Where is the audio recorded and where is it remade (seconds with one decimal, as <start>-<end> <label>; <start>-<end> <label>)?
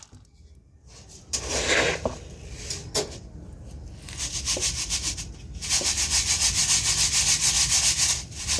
0.0-8.6 recorded